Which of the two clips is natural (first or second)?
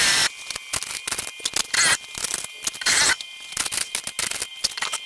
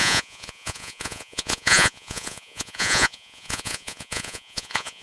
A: first